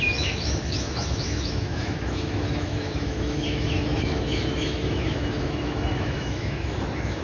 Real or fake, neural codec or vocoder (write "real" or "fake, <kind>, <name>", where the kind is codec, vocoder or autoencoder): fake, autoencoder, DAC-VAE